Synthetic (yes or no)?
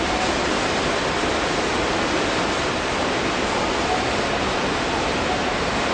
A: no